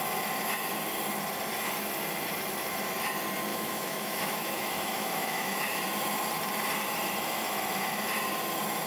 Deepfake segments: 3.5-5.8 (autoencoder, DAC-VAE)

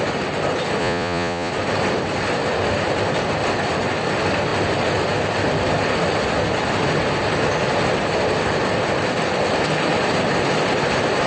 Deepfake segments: 0.8-1.5 (vocoder, Vocos)

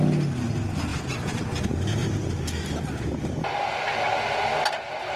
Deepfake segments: 0.9-1.4 (vocoder, BigVGAN v2); 2.0-3.8